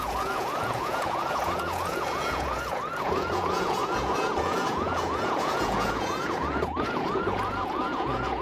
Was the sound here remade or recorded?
remade